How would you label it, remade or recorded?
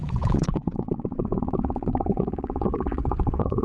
remade